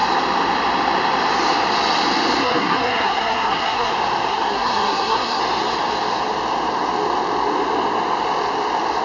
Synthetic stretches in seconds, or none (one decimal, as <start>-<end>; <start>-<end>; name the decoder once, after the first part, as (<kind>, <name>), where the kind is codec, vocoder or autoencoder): 2.4-3.9 (codec, SNAC); 4.3-5.4